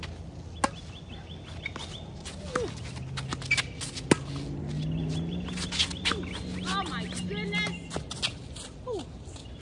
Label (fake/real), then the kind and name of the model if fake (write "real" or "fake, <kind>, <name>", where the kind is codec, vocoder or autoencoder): real